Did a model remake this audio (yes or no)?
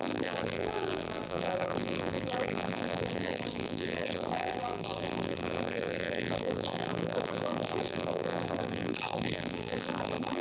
yes